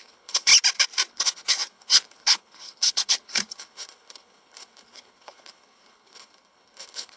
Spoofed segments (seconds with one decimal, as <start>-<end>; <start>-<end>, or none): 0.0-0.5; 1.1-7.2